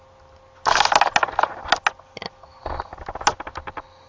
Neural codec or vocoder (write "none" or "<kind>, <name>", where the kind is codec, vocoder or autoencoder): none